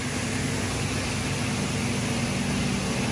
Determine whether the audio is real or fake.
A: real